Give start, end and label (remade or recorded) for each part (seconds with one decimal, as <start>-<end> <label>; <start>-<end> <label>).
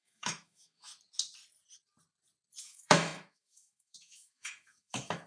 0.0-0.9 remade; 0.9-2.6 recorded; 2.6-5.3 remade